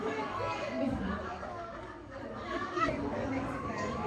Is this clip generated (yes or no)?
yes